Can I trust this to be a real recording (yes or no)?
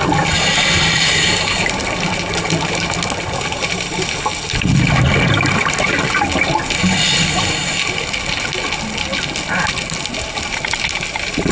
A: yes